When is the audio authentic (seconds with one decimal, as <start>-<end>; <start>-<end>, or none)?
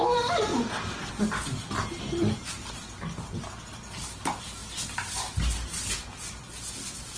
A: 0.0-7.2